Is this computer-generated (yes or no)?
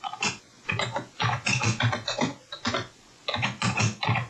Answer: yes